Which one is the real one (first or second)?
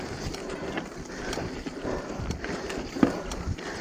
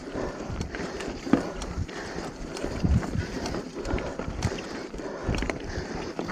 first